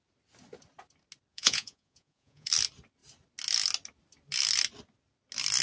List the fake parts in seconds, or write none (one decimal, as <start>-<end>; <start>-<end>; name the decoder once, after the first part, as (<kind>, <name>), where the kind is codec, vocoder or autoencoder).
1.3-2.5 (vocoder, Vocos)